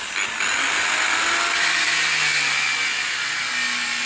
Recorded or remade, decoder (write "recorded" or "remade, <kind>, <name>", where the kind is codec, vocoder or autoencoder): recorded